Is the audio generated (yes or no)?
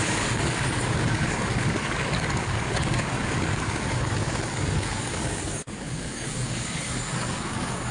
yes